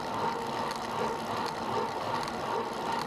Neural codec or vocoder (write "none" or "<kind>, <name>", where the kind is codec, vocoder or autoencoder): none